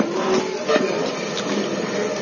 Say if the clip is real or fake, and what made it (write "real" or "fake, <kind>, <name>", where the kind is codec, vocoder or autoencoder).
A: real